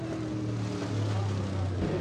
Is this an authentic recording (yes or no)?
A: yes